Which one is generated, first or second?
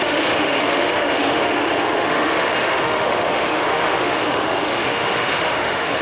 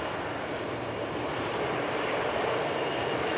first